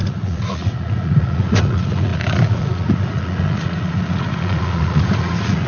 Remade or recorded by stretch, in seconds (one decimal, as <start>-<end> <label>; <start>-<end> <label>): 0.0-5.7 remade